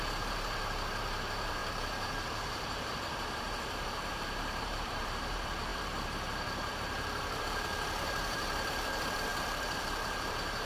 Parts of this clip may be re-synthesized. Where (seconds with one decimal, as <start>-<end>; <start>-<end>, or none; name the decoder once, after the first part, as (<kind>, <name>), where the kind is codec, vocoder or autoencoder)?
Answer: 0.0-10.7 (vocoder, BigVGAN v2)